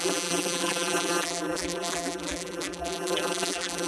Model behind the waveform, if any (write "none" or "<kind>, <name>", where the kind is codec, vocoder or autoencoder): vocoder, BigVGAN v2